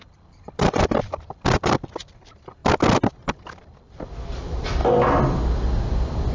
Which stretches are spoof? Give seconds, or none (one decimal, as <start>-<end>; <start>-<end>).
0.0-2.6; 3.1-4.8